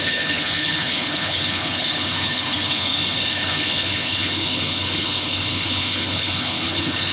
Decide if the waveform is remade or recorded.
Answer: remade